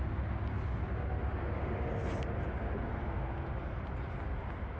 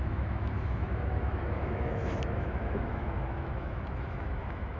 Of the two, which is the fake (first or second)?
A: second